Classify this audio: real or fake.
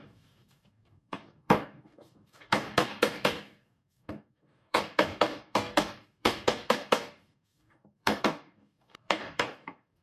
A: fake